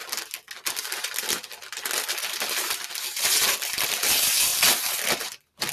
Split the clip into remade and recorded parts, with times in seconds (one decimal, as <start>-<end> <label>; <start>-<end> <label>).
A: 0.0-2.3 recorded; 2.3-5.7 remade